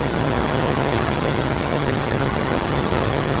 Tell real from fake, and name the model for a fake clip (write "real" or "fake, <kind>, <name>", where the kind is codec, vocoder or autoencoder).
fake, vocoder, HiFi-GAN